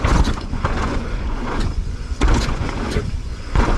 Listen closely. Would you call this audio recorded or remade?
remade